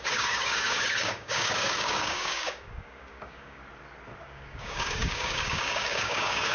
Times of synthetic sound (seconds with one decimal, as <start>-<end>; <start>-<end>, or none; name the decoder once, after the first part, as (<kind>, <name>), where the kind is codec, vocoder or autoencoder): 0.0-3.6 (codec, DAC); 4.2-6.5